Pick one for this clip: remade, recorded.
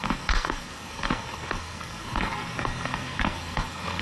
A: remade